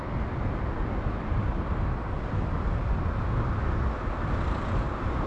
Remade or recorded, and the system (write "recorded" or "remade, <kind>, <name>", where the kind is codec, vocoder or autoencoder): recorded